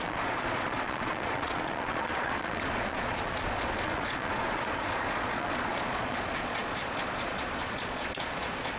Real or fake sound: fake